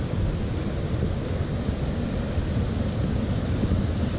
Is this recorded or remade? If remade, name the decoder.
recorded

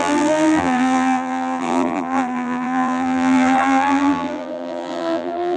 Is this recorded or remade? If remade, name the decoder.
remade, vocoder, BigVGAN v2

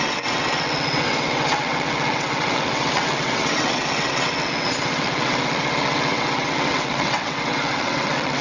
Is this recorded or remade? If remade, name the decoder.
remade, vocoder, WaveNeXt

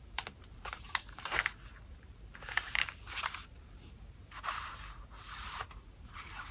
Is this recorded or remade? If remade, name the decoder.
remade, vocoder, BigVGAN v2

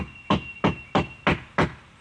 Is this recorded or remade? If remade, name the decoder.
recorded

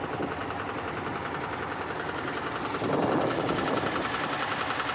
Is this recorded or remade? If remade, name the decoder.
recorded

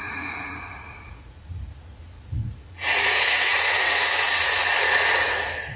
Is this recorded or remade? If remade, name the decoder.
remade, vocoder, Vocos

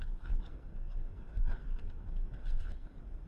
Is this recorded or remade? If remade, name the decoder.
remade, codec, SNAC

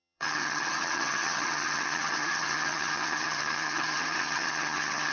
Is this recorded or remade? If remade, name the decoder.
remade, vocoder, HiFi-GAN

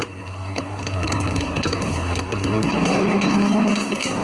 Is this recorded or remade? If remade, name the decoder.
remade, codec, SNAC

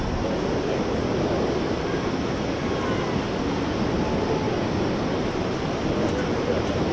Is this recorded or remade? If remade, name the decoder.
recorded